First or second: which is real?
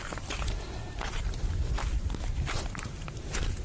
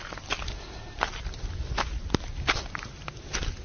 second